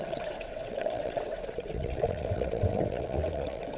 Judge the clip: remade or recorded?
remade